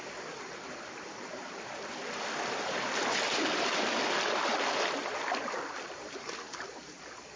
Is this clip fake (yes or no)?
no